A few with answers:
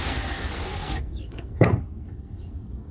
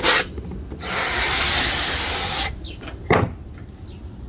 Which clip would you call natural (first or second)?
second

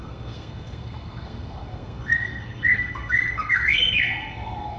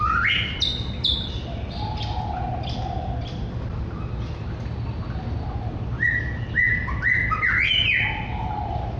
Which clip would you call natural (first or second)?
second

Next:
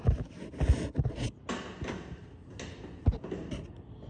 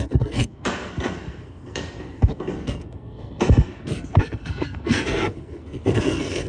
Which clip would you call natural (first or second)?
first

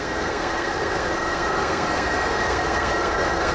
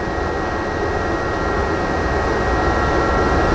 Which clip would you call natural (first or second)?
second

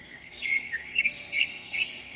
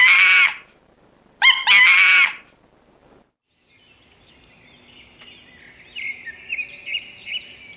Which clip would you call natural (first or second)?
second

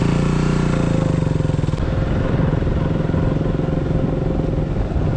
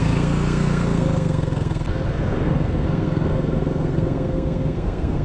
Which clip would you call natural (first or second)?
first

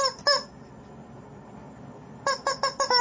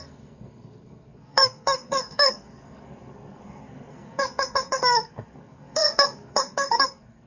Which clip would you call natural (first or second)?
first